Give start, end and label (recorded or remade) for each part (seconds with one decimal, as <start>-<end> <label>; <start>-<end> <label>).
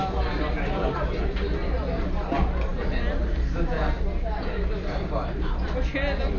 0.0-6.4 recorded